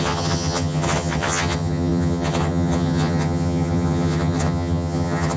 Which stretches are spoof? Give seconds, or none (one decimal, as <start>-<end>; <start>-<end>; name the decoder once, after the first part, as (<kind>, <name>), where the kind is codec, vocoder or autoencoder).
0.0-5.4 (vocoder, HiFi-GAN)